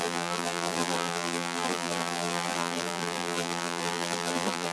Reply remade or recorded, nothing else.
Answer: remade